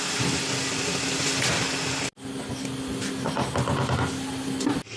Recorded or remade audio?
recorded